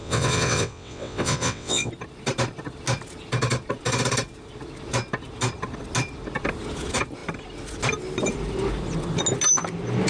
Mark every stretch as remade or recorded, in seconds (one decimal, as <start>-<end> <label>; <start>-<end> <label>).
0.0-1.9 remade; 1.9-10.1 recorded